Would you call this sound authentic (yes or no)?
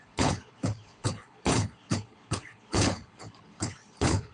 no